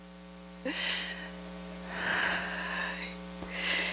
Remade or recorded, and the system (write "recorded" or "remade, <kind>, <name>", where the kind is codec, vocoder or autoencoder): recorded